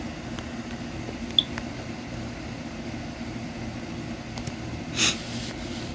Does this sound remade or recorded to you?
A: recorded